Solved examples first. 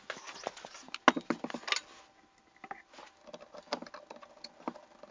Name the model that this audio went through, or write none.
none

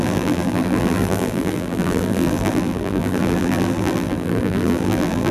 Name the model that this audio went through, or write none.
vocoder, BigVGAN v2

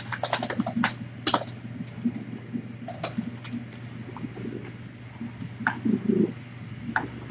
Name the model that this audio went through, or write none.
none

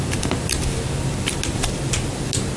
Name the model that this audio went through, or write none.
none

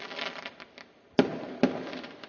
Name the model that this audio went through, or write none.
none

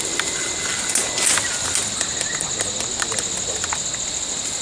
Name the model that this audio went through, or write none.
none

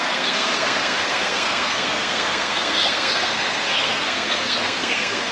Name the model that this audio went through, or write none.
codec, SNAC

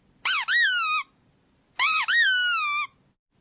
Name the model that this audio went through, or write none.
none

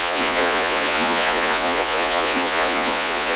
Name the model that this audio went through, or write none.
vocoder, Vocos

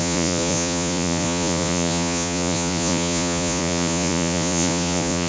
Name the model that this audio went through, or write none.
vocoder, Vocos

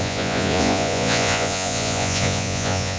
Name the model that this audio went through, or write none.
vocoder, Vocos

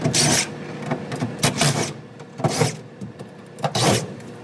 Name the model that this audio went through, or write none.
none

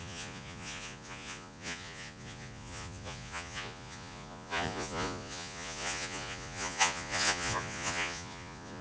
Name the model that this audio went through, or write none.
vocoder, Vocos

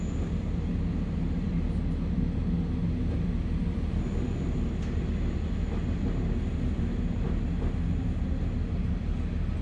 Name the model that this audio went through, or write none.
none